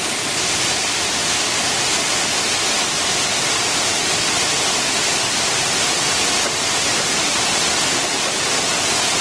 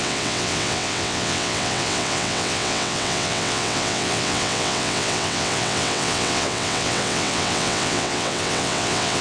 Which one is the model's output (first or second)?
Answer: second